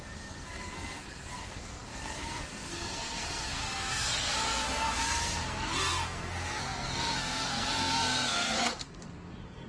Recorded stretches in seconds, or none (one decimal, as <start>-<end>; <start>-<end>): none